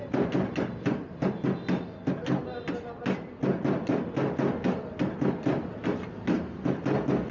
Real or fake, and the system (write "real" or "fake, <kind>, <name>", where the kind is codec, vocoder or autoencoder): real